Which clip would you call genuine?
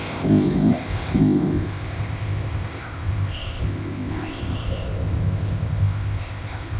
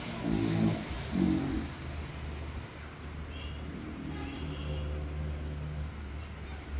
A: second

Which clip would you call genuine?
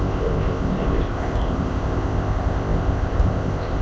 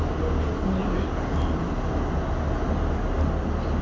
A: second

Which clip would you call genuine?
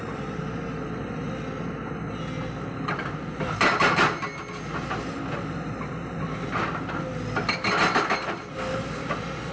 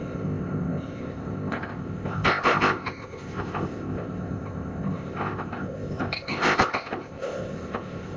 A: first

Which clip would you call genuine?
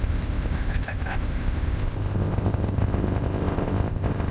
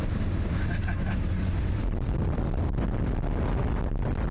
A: second